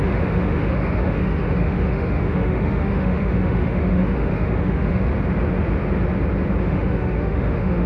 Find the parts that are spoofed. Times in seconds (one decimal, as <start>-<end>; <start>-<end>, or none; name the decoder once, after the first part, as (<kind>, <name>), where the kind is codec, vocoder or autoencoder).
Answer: 0.0-5.1 (autoencoder, DAC-VAE); 6.6-7.9